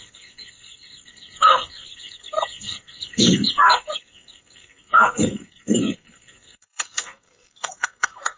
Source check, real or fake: fake